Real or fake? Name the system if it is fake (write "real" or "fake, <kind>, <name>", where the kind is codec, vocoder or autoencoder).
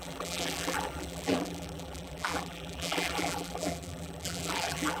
fake, vocoder, BigVGAN v2